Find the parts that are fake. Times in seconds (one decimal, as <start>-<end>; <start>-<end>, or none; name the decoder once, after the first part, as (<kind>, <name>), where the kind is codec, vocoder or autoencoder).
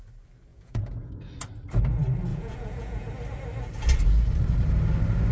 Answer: 0.5-1.1 (vocoder, Vocos); 2.3-3.1